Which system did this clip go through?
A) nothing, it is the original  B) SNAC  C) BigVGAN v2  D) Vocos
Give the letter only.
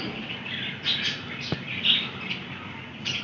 A